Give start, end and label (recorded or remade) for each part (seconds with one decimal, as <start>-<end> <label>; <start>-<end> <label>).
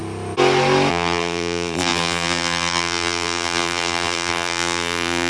0.0-0.9 recorded; 0.9-5.3 remade